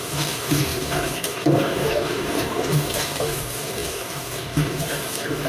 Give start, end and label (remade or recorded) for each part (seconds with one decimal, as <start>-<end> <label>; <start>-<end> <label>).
0.0-5.5 remade